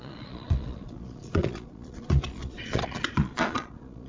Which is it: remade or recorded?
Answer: remade